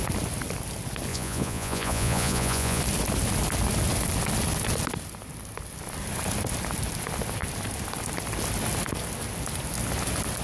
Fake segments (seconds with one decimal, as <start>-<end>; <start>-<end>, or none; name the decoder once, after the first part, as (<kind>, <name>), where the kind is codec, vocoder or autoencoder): 1.1-2.8 (vocoder, Vocos)